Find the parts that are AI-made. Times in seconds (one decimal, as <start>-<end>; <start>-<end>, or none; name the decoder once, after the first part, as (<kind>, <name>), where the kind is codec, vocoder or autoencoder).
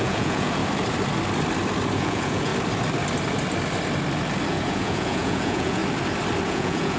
0.0-0.6 (vocoder, Vocos); 1.9-2.5; 4.5-5.8; 6.5-7.0